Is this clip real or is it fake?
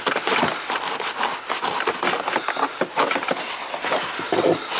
real